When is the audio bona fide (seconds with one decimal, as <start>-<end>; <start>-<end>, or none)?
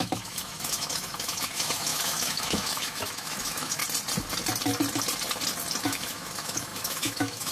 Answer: 3.8-5.8